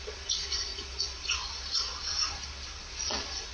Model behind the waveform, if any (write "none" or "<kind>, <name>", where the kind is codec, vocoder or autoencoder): vocoder, Vocos